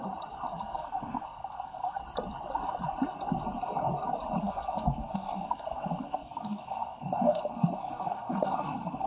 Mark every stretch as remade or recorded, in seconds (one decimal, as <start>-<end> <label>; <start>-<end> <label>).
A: 0.0-0.6 recorded; 0.6-2.0 remade; 2.0-4.4 recorded; 4.4-9.1 remade